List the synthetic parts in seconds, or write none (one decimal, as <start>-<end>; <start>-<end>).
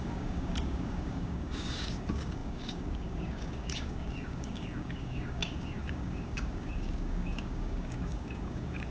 0.0-8.9